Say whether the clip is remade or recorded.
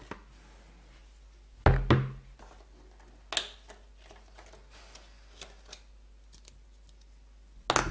recorded